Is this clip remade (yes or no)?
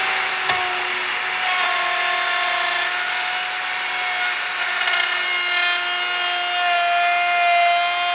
no